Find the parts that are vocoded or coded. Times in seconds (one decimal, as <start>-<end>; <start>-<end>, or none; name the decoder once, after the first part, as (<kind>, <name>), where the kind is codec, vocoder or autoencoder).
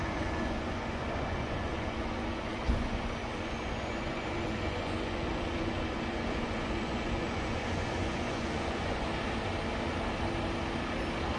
0.0-9.1 (vocoder, Vocos)